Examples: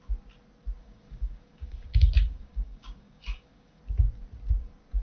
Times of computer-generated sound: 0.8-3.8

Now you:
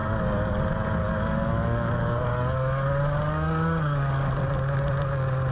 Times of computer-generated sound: 0.0-0.6; 1.0-4.3